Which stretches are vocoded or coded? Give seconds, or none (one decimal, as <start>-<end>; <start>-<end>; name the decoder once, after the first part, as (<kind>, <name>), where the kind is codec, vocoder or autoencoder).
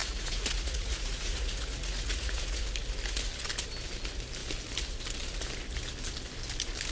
0.0-2.6 (vocoder, Vocos)